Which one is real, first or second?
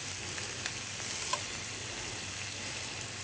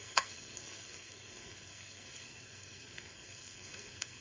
first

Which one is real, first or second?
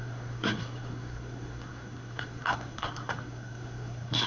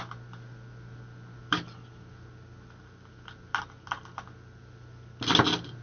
second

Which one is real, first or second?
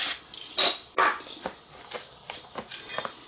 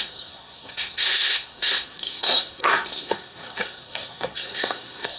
first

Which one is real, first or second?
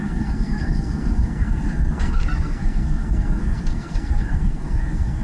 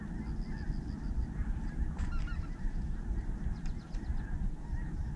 second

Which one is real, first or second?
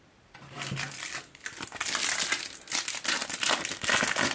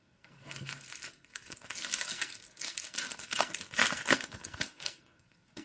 first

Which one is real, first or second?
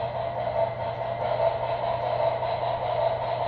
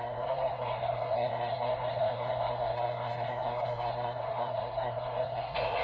first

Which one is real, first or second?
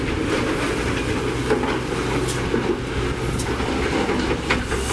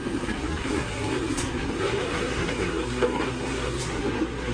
first